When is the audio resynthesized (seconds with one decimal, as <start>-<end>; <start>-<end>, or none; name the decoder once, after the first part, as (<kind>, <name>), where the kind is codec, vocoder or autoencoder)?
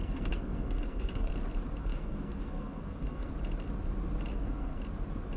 0.0-1.3 (codec, SNAC); 1.8-3.3; 4.3-4.8